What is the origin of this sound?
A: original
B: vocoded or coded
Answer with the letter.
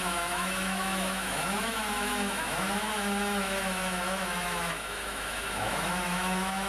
B